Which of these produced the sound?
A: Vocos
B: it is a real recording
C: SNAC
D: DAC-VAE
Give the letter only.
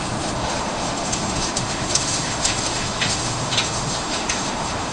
D